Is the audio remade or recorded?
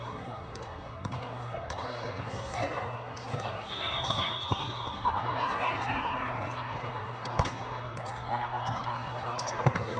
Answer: remade